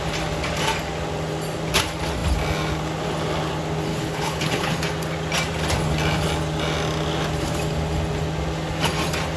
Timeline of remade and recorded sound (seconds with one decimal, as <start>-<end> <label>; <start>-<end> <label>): 0.0-3.9 recorded; 3.9-4.7 remade; 4.7-9.4 recorded